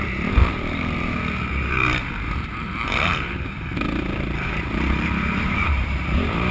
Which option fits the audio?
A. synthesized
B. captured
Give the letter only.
A